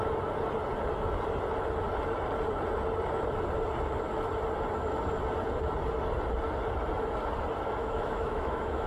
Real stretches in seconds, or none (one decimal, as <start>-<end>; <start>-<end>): 0.0-7.8